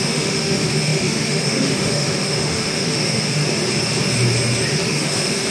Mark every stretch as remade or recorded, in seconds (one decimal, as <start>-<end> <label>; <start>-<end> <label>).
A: 0.0-3.4 remade; 3.4-4.7 recorded; 4.7-5.5 remade